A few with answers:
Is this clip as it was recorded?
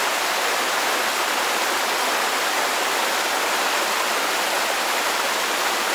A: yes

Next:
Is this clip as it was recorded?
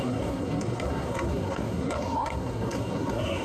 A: no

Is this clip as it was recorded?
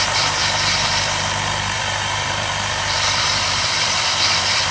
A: no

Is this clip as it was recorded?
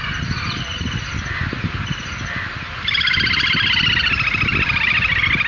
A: yes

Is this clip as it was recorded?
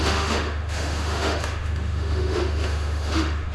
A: no